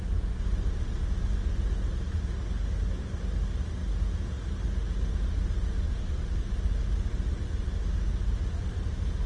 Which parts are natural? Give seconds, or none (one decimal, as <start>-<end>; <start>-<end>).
0.0-9.3